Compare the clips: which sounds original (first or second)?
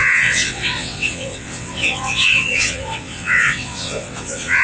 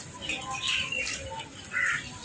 second